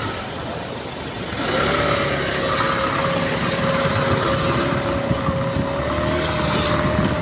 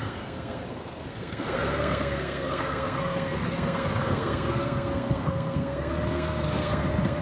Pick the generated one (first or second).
second